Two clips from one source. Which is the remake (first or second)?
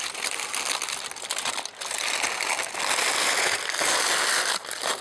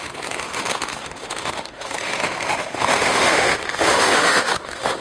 second